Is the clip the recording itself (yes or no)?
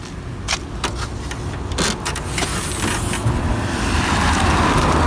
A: yes